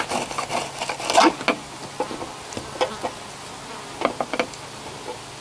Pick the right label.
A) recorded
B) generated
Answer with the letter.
A